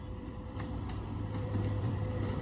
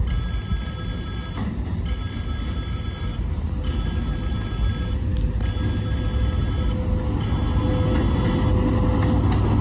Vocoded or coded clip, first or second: first